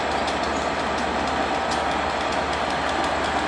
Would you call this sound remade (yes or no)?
no